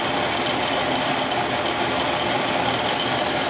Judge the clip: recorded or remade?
recorded